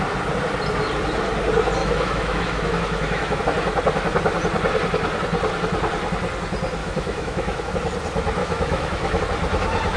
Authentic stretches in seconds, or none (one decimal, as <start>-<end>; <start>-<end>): 0.0-1.8; 3.4-6.8; 7.7-8.4; 9.2-10.0